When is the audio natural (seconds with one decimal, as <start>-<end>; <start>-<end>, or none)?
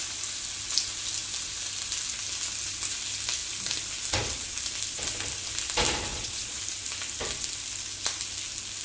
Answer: 0.0-6.1; 6.6-8.8